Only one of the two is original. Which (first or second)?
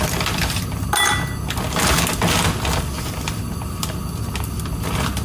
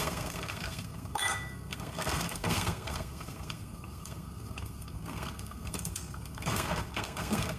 first